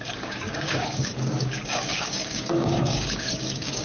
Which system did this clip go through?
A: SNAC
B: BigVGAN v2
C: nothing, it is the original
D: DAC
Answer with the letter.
D